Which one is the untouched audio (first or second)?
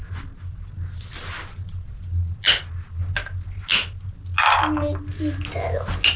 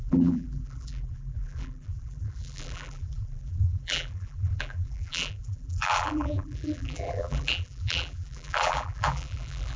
first